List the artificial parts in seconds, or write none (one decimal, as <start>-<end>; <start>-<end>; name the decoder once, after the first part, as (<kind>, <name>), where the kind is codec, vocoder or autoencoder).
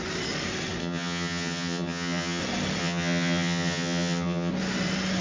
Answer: 0.8-2.4 (vocoder, HiFi-GAN); 2.8-4.5